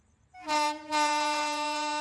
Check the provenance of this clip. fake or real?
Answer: fake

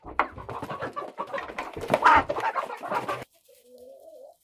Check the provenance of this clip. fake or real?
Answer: real